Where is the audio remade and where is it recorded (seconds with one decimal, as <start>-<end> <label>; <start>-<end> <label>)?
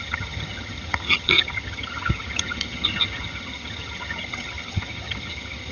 0.0-5.7 remade